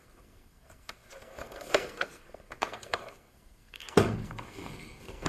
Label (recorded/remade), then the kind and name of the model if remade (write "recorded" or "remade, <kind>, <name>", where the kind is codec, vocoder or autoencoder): remade, codec, SNAC